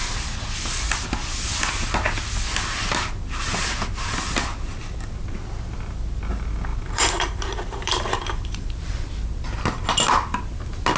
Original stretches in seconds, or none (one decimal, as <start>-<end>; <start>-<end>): 0.0-6.7; 9.1-11.0